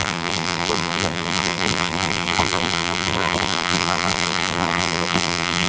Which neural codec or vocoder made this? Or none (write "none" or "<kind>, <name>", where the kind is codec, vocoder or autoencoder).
vocoder, BigVGAN v2